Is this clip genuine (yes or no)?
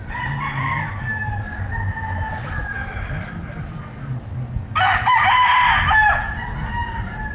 yes